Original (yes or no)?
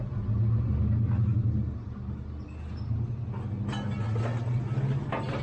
yes